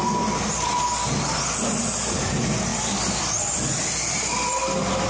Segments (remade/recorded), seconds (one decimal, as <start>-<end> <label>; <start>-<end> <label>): 0.0-5.1 recorded